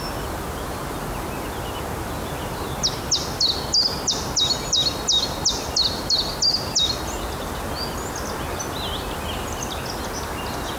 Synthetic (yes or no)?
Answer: no